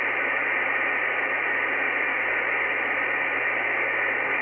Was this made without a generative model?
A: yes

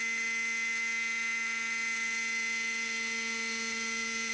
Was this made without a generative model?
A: yes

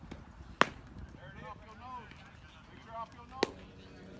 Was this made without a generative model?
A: yes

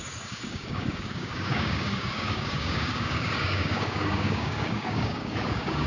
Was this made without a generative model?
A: no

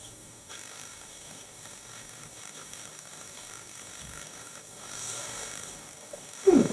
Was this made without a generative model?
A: no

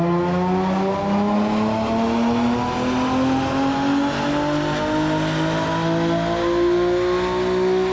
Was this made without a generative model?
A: yes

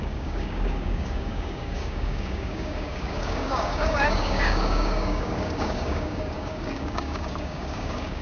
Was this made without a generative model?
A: no